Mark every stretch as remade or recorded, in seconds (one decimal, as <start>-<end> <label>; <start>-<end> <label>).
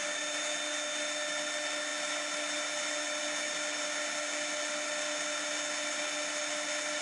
0.0-7.0 recorded